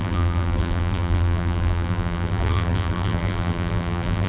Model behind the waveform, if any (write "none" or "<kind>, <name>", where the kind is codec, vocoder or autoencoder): vocoder, BigVGAN v2